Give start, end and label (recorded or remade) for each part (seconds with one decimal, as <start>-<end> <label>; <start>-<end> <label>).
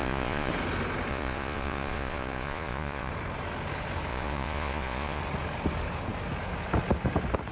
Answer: 0.0-0.5 remade; 0.5-1.1 recorded; 1.1-3.1 remade; 3.1-4.1 recorded; 4.1-5.2 remade; 5.2-7.5 recorded